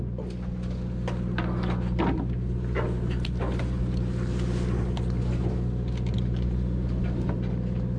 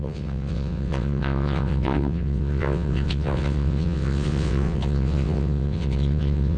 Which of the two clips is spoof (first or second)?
second